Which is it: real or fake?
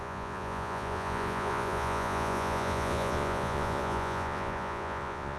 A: fake